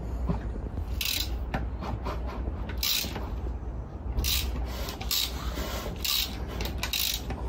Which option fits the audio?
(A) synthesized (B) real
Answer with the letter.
B